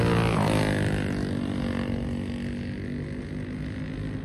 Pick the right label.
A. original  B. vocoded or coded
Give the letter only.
A